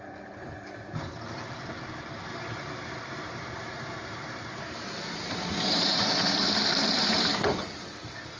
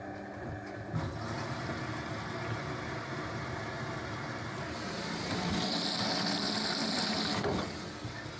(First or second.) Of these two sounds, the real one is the second